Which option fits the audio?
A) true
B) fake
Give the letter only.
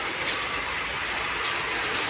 A